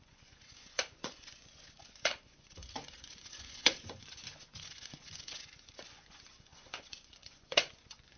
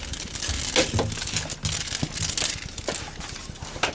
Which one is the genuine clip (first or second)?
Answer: second